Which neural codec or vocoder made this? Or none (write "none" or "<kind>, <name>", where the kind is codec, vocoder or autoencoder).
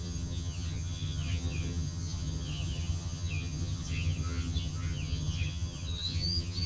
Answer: vocoder, HiFi-GAN